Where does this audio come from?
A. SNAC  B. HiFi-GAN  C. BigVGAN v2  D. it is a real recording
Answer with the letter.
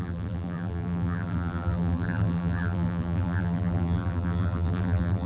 C